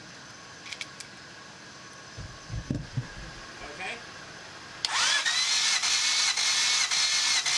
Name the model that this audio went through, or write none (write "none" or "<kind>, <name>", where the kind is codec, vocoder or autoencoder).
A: none